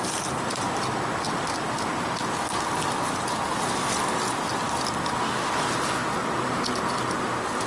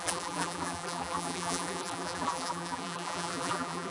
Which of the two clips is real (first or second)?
first